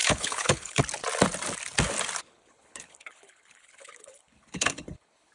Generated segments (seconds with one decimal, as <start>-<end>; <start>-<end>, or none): 0.0-0.8; 2.2-5.3